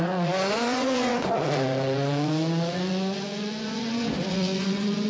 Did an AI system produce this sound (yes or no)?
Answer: yes